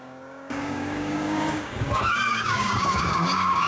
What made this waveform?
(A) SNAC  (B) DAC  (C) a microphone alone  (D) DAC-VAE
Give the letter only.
B